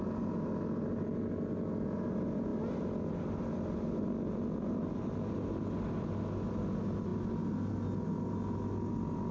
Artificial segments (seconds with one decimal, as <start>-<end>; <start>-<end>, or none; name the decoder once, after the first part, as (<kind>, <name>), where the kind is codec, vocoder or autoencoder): none